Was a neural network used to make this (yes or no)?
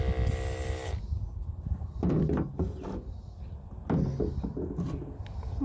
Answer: no